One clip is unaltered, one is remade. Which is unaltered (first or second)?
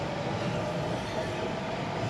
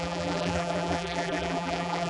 first